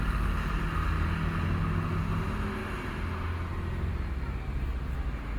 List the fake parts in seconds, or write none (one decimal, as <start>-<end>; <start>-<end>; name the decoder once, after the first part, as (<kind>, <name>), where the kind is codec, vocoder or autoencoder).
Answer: none